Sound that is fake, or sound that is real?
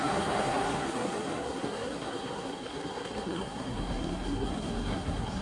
fake